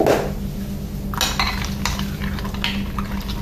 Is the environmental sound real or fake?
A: real